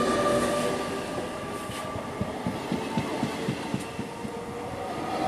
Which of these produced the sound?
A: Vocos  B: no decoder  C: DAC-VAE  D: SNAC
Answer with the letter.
B